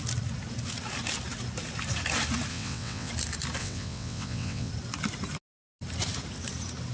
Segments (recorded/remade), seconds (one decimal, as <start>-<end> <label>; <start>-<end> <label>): 0.0-2.5 recorded; 2.5-3.1 remade; 3.1-3.6 recorded; 3.6-4.7 remade; 4.7-6.9 recorded